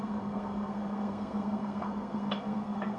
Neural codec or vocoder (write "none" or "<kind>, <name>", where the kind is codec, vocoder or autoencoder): codec, SNAC